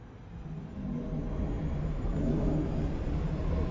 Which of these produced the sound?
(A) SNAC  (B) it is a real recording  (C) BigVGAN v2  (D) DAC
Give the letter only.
B